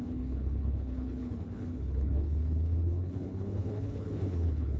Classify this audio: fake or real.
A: fake